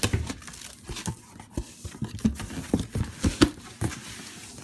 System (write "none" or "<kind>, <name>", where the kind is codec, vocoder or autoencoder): none